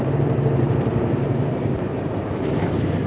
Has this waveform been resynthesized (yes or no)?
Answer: yes